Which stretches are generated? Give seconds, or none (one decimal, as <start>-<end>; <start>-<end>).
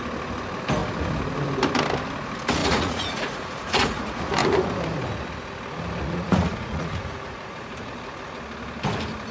2.6-4.2; 6.0-7.9